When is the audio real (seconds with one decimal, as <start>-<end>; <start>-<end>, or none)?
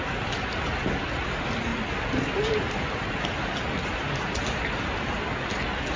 0.0-6.0